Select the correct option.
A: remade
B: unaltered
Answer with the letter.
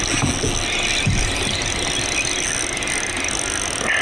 B